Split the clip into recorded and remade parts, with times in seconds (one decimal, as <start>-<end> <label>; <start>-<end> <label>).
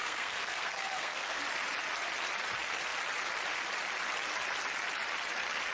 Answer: 0.0-1.4 remade; 1.4-5.7 recorded